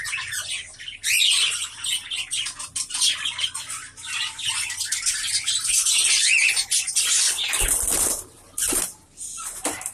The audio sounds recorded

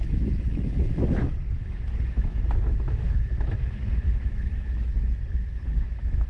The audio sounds remade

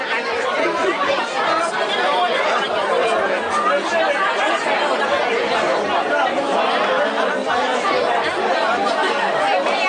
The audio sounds recorded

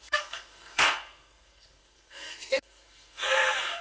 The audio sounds remade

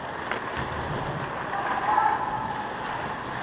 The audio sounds recorded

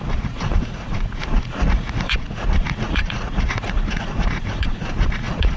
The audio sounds remade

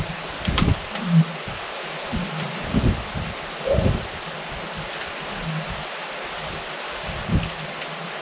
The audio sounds recorded